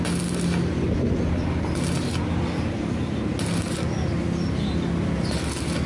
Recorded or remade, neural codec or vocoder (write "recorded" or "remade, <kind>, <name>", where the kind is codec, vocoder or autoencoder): recorded